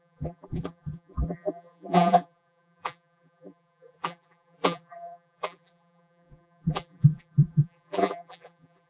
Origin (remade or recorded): remade